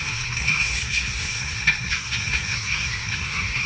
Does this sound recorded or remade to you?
remade